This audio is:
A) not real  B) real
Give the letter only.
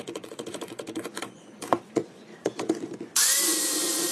A